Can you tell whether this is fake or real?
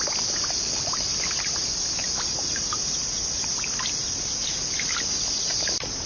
real